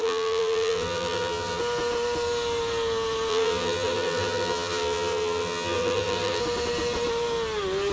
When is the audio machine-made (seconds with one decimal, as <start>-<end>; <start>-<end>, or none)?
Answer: 0.0-1.6; 3.3-6.4